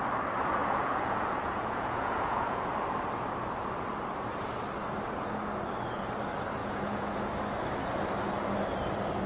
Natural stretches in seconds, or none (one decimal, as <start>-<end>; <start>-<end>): 0.0-0.6; 2.7-6.6; 7.3-9.3